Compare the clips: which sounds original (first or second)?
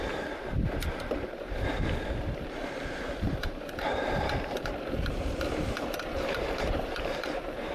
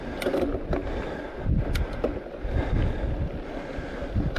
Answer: second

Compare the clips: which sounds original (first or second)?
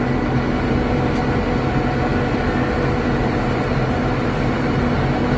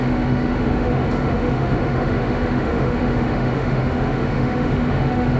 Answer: first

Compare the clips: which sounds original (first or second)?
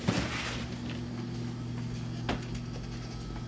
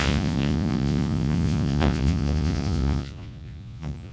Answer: first